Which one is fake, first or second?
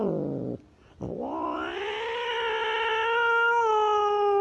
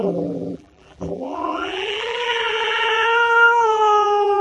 second